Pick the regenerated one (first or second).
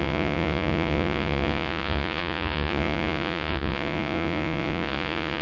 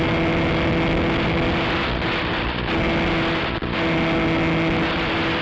first